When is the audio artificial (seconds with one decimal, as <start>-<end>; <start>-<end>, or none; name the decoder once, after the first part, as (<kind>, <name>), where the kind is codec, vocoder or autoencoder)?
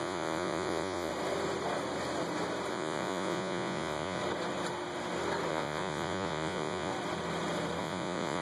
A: 0.0-1.1 (vocoder, Vocos); 2.7-4.2; 5.5-6.9; 7.8-8.4